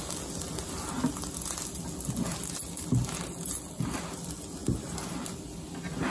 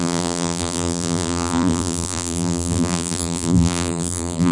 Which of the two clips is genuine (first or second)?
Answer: first